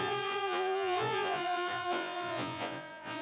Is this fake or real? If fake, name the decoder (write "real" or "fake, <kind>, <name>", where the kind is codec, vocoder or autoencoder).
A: fake, vocoder, Vocos